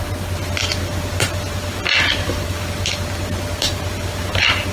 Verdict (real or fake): real